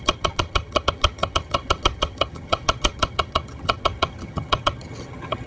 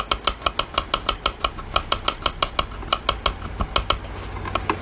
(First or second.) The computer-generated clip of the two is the first